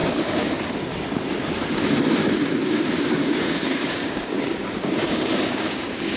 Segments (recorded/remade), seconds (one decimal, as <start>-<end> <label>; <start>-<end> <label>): 0.0-0.7 remade; 0.7-2.2 recorded; 2.2-6.2 remade